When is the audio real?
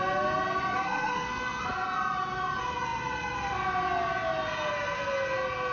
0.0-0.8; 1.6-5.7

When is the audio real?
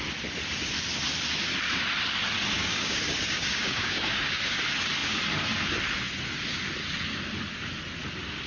0.0-2.6; 4.6-8.5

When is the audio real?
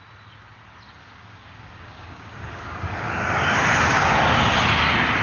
0.0-1.0; 4.1-5.2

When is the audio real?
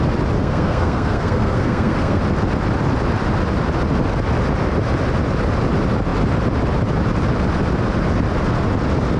0.0-0.4; 2.2-9.2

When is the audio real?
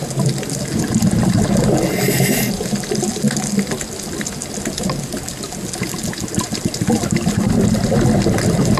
0.0-8.8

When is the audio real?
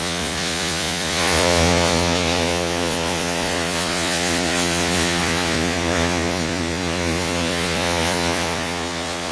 none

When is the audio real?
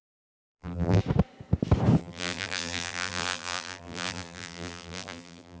1.0-2.0